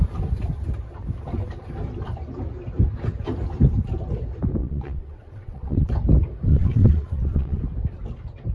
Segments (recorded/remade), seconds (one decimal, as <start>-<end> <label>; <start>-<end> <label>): 0.0-4.6 recorded; 4.6-5.9 remade; 5.9-6.5 recorded; 6.5-7.6 remade; 7.6-8.5 recorded